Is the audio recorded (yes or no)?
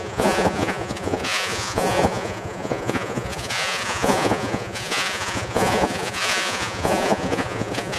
no